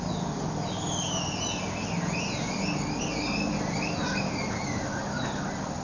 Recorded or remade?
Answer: recorded